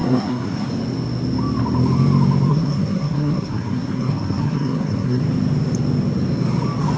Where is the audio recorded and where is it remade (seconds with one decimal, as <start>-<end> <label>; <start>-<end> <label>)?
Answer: 0.0-0.7 remade; 0.7-2.5 recorded; 2.5-5.2 remade; 5.2-7.0 recorded